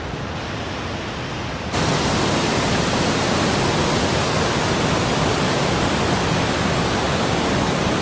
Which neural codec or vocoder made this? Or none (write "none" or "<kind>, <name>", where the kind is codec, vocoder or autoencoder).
none